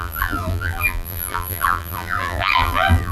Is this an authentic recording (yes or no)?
no